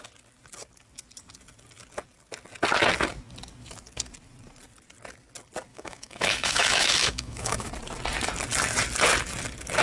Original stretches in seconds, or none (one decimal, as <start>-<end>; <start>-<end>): 0.0-5.7; 7.7-9.8